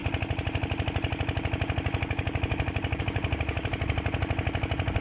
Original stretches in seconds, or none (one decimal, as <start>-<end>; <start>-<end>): 0.0-5.0